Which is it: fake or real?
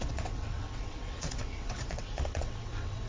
fake